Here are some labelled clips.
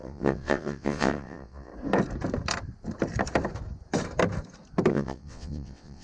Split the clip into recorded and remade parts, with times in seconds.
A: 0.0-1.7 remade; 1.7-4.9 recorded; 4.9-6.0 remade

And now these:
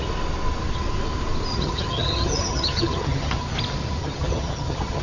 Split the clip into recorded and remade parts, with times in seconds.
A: 0.0-1.5 recorded; 1.5-3.4 remade; 3.4-4.0 recorded; 4.0-5.0 remade